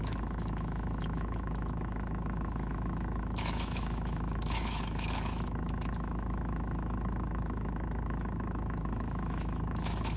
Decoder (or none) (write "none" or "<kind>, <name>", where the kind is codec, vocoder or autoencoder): autoencoder, DAC-VAE